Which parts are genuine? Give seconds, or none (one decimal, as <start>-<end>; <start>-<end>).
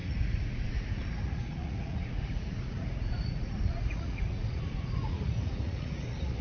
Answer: none